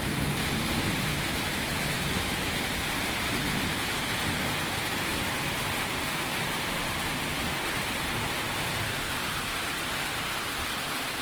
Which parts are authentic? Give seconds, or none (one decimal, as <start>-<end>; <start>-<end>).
0.0-1.1; 2.6-11.2